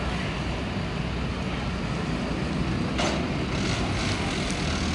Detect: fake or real real